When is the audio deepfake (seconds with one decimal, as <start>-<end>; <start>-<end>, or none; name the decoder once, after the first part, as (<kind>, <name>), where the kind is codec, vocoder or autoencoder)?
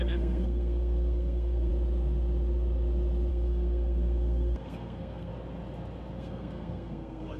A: 0.0-1.7 (codec, SNAC); 3.3-5.3; 6.2-7.4